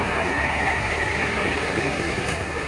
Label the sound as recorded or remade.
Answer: remade